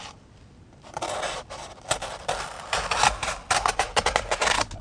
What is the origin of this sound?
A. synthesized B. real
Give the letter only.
B